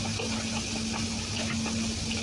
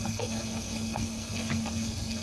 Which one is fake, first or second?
second